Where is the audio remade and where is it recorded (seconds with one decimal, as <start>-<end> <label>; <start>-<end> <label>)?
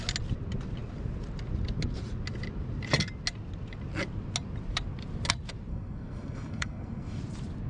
0.0-5.7 recorded; 5.7-7.2 remade; 7.2-7.7 recorded